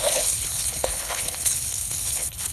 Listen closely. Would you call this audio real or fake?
fake